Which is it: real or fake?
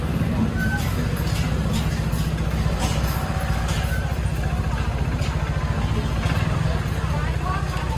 real